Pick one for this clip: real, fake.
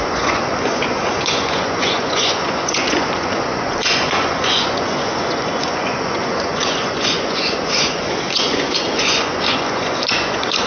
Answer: fake